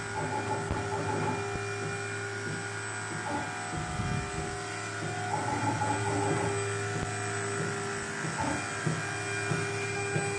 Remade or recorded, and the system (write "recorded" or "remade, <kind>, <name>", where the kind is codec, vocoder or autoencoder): recorded